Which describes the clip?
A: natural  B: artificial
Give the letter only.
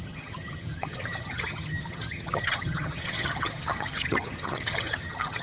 B